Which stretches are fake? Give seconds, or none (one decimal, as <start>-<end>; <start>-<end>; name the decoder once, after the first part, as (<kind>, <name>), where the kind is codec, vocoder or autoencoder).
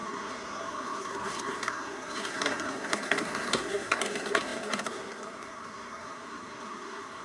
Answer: 0.0-7.2 (codec, SNAC)